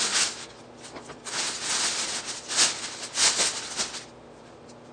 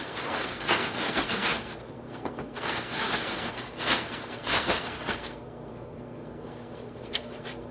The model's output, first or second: second